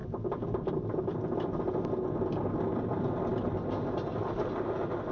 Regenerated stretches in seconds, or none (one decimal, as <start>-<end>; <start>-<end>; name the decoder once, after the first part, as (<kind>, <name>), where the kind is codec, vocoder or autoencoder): none